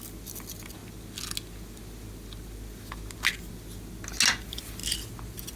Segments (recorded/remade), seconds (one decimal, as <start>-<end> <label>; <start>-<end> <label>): 0.0-5.6 recorded